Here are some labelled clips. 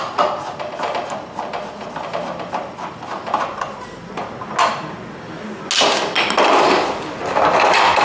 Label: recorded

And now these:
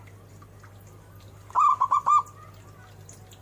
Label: recorded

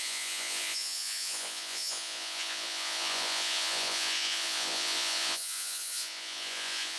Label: remade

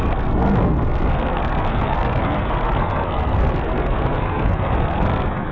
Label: remade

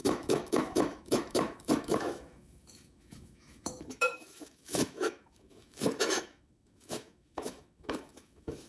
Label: remade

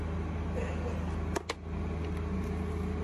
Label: recorded